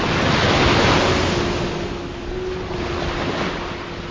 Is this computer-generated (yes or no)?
no